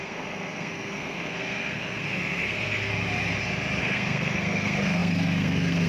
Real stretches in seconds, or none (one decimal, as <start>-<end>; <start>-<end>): 2.9-3.8